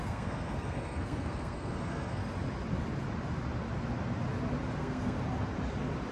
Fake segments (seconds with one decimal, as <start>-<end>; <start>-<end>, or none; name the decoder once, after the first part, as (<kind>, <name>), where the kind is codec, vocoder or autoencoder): 0.0-2.2 (codec, SNAC); 4.8-5.2